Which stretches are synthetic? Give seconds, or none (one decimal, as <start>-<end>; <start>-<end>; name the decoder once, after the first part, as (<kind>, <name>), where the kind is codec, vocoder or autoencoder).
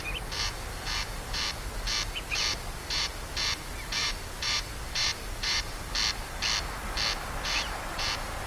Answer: 2.5-3.3 (vocoder, BigVGAN v2); 4.0-5.9